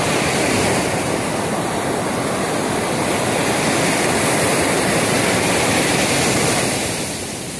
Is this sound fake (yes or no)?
yes